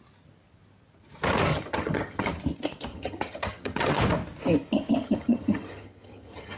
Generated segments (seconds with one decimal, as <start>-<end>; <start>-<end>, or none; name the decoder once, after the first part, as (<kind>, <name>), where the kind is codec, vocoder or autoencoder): 1.5-2.3 (vocoder, HiFi-GAN); 2.9-4.0; 5.0-6.6